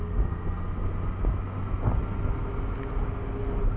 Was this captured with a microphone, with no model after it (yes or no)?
yes